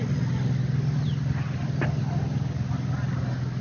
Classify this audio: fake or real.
real